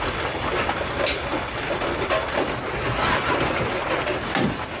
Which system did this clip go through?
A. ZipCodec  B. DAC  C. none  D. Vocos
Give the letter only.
C